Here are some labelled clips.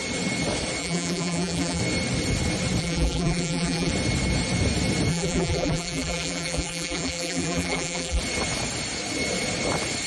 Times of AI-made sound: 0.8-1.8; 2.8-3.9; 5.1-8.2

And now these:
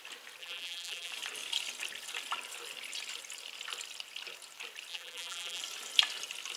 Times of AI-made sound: 0.4-1.1; 4.9-5.6

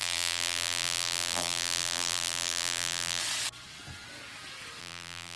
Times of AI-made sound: 0.0-3.2; 4.8-5.4

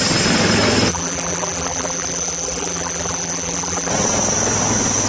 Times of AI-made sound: 0.9-3.9

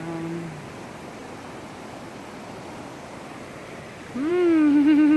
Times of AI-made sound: none

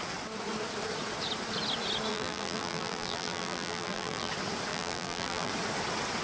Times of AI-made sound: 2.1-4.3; 4.7-5.5